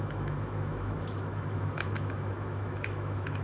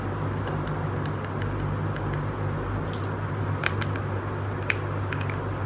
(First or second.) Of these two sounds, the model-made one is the first